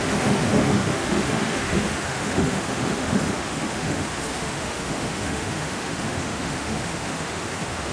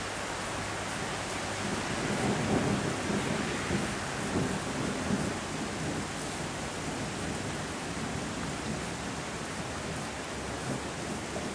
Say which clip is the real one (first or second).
second